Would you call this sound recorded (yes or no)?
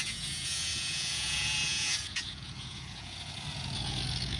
no